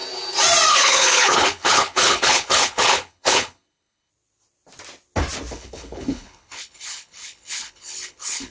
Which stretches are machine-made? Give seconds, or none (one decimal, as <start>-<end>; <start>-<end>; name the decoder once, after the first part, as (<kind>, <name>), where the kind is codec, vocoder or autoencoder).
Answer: 0.7-4.1 (codec, HILCodec); 5.5-8.5